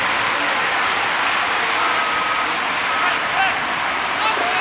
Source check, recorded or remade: recorded